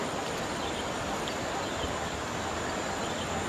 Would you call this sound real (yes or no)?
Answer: yes